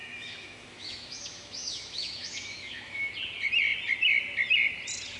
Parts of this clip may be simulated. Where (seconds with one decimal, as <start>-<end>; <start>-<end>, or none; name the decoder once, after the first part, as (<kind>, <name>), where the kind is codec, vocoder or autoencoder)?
0.0-3.1 (autoencoder, DAC-VAE)